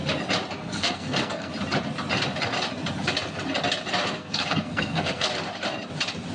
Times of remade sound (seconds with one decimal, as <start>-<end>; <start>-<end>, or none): 0.6-1.5; 4.2-5.3